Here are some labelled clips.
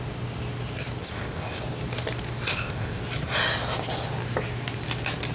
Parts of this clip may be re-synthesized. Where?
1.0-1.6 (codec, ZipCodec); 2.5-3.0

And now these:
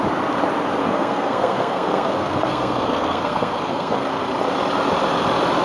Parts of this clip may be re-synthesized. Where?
0.8-4.2 (codec, SNAC)

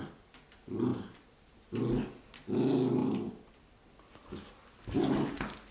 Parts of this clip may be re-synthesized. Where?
3.0-3.8 (vocoder, BigVGAN v2)

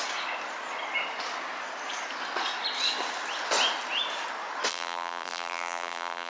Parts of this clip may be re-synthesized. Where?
4.7-6.3 (vocoder, BigVGAN v2)

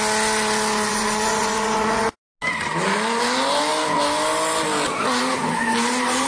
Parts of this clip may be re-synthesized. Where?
0.9-2.2 (vocoder, Vocos)

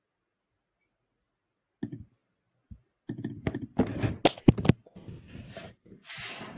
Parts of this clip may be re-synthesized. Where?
5.4-6.6 (vocoder, BigVGAN v2)

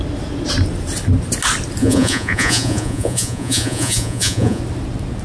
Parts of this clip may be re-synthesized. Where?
1.8-4.6 (vocoder, Vocos)

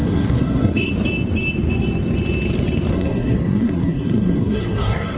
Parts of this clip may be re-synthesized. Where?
0.0-0.9 (codec, SNAC); 2.9-5.2